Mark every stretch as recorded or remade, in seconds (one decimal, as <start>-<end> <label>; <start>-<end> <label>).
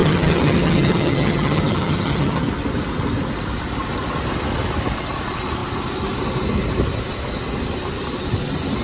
0.0-2.5 remade; 2.5-8.8 recorded